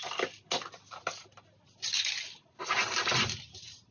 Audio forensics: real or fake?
real